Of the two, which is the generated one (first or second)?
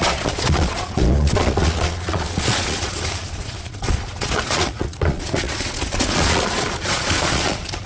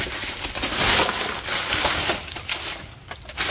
first